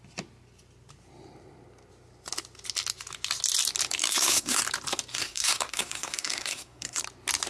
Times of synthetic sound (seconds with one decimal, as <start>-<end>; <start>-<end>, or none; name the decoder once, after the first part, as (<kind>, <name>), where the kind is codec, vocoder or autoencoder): 4.0-4.6 (codec, SNAC); 5.1-7.0